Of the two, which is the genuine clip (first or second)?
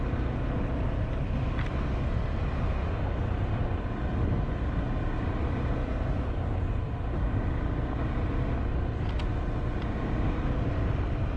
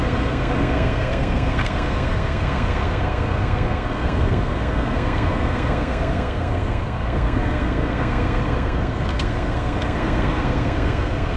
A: first